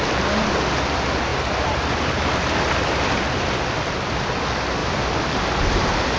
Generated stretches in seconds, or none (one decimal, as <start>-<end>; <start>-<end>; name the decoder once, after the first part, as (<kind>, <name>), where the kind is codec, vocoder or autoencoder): 4.8-6.2 (vocoder, BigVGAN v2)